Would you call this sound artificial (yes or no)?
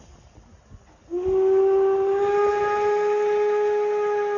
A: no